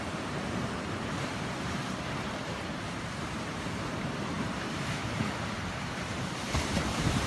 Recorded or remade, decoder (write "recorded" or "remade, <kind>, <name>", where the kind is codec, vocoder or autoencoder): remade, vocoder, BigVGAN v2